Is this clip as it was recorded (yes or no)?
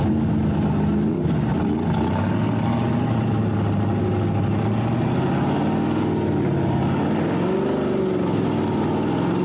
yes